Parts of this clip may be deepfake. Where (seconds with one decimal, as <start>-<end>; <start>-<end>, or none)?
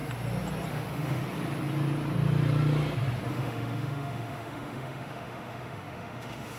0.7-1.2; 3.3-6.6